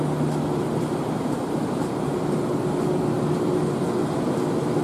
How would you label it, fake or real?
real